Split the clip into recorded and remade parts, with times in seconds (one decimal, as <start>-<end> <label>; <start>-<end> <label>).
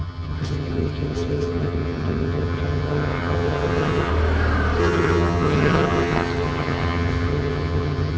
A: 0.0-4.1 remade; 4.1-4.8 recorded; 4.8-8.2 remade